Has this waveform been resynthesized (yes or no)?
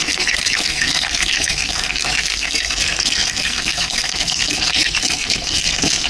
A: yes